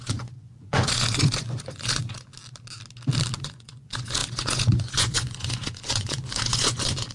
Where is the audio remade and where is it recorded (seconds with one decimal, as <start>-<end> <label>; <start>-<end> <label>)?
0.0-2.3 remade; 2.3-3.4 recorded; 3.4-7.1 remade